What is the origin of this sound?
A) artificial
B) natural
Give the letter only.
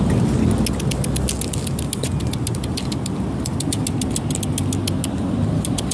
B